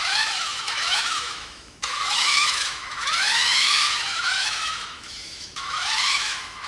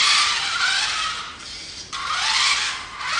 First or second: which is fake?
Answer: first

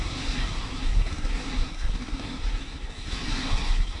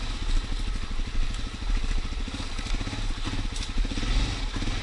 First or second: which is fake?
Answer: first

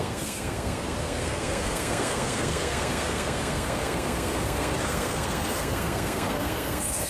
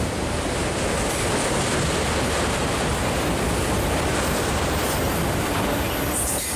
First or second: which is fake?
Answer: first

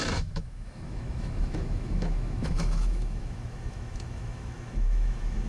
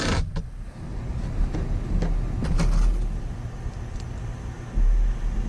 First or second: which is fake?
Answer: first